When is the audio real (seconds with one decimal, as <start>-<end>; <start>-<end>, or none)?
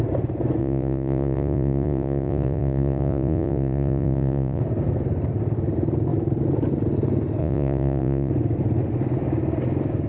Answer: 0.0-0.6; 4.6-7.4; 8.3-10.1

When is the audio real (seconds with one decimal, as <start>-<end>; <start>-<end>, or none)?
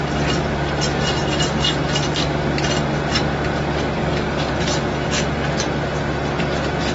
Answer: 0.0-4.0; 4.5-6.9